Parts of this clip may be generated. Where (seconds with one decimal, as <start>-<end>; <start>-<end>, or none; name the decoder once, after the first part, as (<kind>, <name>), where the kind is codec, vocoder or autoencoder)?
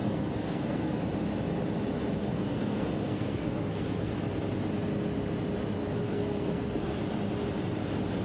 0.0-1.0 (codec, SNAC); 2.2-4.1; 5.8-7.0